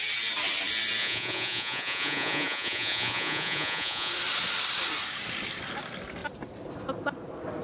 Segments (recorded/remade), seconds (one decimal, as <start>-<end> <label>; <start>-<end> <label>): 0.0-1.0 recorded; 1.0-4.1 remade; 4.1-7.6 recorded